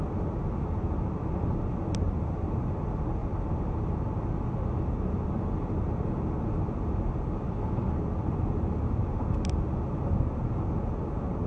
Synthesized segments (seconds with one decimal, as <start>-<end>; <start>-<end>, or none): none